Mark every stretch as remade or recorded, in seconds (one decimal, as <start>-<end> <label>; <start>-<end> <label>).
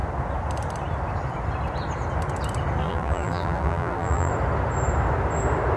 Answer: 0.0-2.8 recorded; 2.8-4.3 remade; 4.3-5.8 recorded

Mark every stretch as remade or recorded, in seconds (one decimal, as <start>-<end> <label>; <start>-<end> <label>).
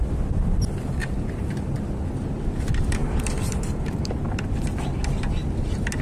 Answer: 0.0-1.0 recorded; 1.0-1.8 remade; 1.8-3.0 recorded; 3.0-4.1 remade; 4.1-6.0 recorded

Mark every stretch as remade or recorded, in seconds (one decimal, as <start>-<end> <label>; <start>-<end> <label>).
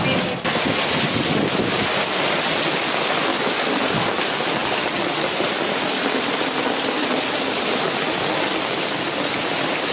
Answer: 0.0-4.6 recorded; 4.6-6.0 remade; 6.0-9.9 recorded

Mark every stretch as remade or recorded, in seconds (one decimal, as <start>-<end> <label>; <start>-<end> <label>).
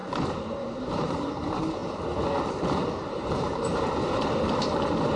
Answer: 0.0-1.8 remade; 1.8-3.0 recorded; 3.0-5.2 remade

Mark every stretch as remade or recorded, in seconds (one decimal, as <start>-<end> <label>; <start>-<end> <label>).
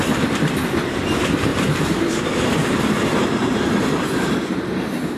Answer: 0.0-1.5 recorded; 1.5-4.6 remade; 4.6-5.2 recorded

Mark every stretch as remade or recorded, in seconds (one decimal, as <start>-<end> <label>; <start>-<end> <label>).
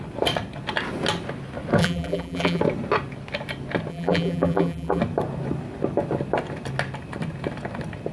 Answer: 0.0-1.8 recorded; 1.8-2.6 remade; 2.6-3.9 recorded; 3.9-5.0 remade; 5.0-8.1 recorded